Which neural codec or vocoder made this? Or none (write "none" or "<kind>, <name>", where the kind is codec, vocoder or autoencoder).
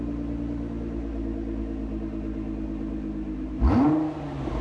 none